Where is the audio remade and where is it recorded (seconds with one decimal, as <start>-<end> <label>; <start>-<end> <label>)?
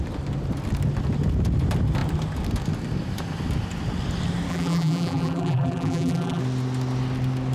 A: 0.0-4.5 recorded; 4.5-6.4 remade; 6.4-7.5 recorded